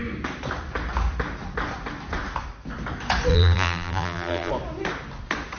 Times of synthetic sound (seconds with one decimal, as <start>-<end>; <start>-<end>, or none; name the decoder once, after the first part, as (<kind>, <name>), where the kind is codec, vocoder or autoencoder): 3.3-4.5 (vocoder, BigVGAN v2)